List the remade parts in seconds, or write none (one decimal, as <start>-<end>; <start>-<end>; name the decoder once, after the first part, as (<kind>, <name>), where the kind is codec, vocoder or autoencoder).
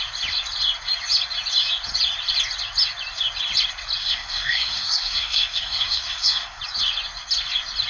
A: 4.0-6.6 (codec, SNAC)